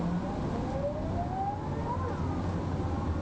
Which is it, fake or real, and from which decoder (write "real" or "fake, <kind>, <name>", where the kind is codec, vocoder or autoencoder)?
real